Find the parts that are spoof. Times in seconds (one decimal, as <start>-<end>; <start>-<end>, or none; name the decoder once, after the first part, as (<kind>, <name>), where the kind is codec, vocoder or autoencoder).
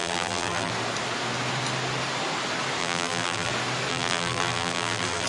0.0-0.7 (vocoder, BigVGAN v2); 2.8-3.5; 3.9-5.3